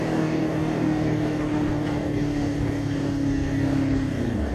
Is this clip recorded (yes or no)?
no